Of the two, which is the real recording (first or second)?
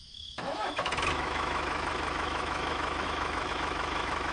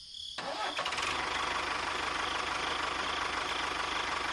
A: second